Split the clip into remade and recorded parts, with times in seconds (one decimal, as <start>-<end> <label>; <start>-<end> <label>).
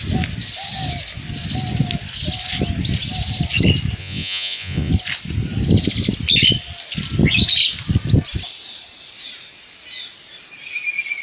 0.0-4.0 recorded; 4.0-4.9 remade; 4.9-11.2 recorded